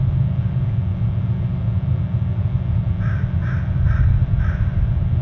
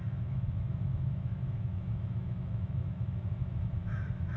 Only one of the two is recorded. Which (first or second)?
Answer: first